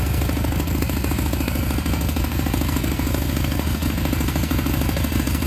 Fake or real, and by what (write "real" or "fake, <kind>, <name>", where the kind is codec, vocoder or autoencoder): fake, codec, SNAC